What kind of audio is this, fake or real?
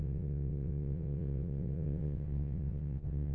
fake